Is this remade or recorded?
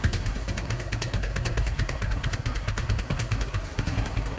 remade